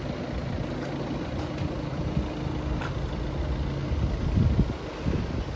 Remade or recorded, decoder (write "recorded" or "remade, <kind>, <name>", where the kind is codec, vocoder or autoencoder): recorded